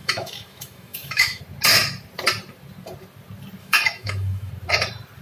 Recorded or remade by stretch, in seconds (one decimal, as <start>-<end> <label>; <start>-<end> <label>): 0.0-1.4 remade; 1.4-3.6 recorded; 3.6-4.5 remade; 4.5-5.2 recorded